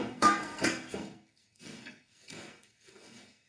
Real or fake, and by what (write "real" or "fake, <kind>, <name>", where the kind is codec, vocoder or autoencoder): fake, codec, SNAC